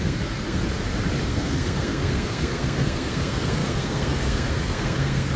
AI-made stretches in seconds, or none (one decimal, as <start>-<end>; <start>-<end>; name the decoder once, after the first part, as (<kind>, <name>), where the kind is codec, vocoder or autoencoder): 0.0-0.6 (codec, SNAC); 1.2-5.4

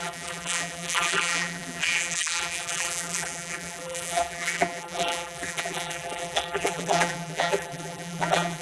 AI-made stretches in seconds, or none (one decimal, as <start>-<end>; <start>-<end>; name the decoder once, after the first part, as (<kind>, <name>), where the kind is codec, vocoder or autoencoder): 0.0-8.6 (vocoder, BigVGAN v2)

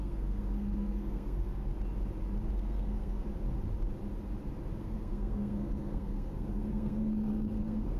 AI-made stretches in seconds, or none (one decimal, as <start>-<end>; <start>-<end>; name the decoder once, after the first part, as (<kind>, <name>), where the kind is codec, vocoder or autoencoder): 0.0-1.7 (codec, SNAC); 2.5-3.3; 4.8-8.0

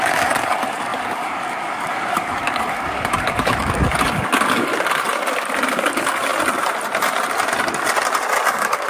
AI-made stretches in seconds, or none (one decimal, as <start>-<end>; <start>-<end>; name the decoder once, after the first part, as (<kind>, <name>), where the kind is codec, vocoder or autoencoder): 0.0-4.7 (codec, DAC); 5.7-6.3; 8.5-8.9

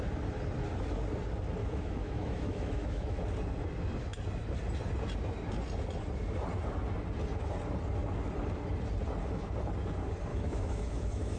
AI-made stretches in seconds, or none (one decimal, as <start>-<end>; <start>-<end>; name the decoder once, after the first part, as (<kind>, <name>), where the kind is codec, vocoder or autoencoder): 1.6-3.2 (autoencoder, DAC-VAE); 10.3-11.4

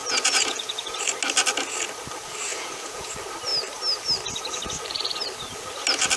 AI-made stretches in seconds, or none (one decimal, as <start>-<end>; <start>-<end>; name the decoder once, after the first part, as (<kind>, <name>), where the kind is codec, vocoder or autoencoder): 0.0-1.0 (vocoder, Vocos); 2.5-3.1

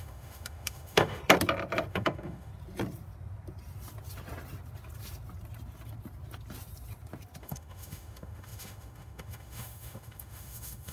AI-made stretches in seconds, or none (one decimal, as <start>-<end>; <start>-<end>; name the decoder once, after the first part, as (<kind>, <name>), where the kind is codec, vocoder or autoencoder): 0.0-1.2 (autoencoder, DAC-VAE); 1.9-2.5; 7.4-10.9

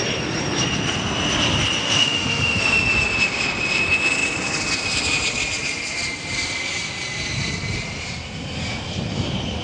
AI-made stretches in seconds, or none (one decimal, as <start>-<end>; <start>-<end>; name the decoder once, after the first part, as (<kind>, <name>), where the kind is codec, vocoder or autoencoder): 1.8-2.6 (autoencoder, DAC-VAE)